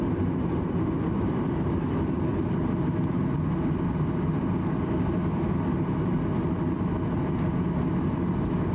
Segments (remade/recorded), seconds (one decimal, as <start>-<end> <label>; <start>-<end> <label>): 0.0-8.7 recorded

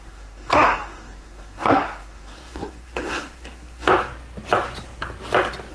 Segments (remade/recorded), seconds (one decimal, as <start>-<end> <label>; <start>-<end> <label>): 0.0-3.9 remade; 3.9-5.7 recorded